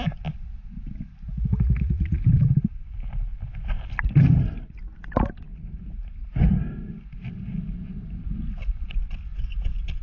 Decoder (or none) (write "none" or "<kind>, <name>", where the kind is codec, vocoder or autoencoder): none